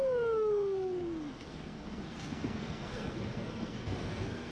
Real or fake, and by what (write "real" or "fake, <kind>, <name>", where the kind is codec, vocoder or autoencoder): fake, codec, SNAC